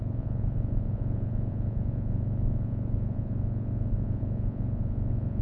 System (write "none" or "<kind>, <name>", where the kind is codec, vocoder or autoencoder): vocoder, Vocos